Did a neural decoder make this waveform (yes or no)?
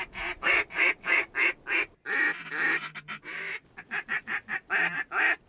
no